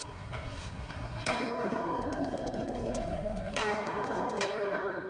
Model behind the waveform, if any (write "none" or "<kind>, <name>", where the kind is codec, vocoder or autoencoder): codec, SNAC